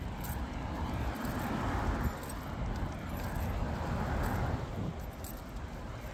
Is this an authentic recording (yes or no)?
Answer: yes